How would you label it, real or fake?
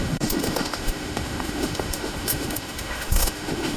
fake